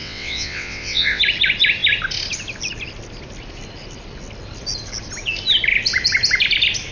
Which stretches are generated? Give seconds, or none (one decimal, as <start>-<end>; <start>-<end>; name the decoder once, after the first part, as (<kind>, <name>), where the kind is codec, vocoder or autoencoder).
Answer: 0.0-1.2 (vocoder, WaveNeXt)